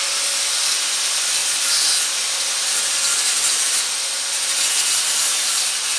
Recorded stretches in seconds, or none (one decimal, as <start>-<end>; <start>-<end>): 0.0-6.0

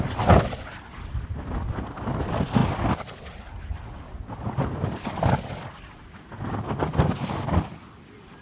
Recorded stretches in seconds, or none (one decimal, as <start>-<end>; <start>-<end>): 0.0-8.4

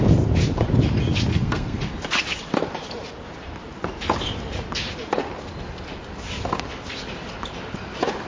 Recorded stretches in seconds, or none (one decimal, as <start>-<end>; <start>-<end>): 0.0-1.3; 1.9-8.3

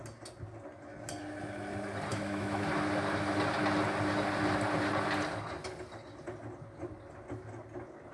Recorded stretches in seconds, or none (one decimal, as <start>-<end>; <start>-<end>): 0.0-2.1; 2.7-8.1

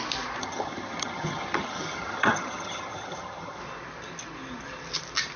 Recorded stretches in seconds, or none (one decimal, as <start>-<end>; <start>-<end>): 0.0-0.4; 3.6-5.4

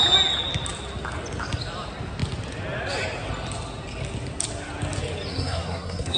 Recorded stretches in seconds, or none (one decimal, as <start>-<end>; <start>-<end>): 0.0-5.3

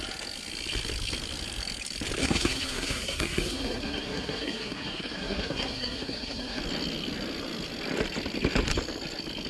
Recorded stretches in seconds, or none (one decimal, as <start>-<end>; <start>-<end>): 0.0-2.2; 6.6-9.5